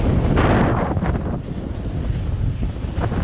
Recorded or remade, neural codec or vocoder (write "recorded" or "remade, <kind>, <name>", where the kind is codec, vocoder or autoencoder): recorded